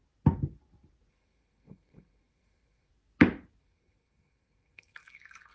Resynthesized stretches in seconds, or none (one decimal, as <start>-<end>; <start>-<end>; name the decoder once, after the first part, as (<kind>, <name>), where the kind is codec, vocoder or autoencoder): 1.1-2.9 (codec, SNAC); 3.6-5.5